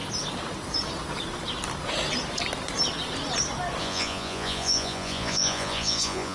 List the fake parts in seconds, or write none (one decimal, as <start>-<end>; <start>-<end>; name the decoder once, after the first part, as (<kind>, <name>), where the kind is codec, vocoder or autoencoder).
3.8-6.3 (vocoder, Vocos)